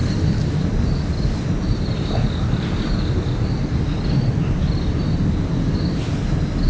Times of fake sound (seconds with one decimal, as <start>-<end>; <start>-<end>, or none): none